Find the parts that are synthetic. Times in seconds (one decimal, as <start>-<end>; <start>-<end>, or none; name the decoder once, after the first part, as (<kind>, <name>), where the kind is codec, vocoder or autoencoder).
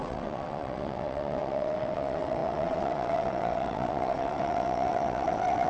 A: 0.0-5.7 (vocoder, WaveNeXt)